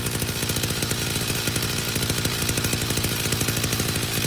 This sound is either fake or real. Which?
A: real